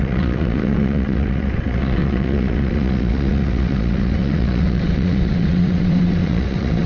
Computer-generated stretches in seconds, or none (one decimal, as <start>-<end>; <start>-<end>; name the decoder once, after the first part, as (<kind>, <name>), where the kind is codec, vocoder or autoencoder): 0.0-6.9 (vocoder, WaveNeXt)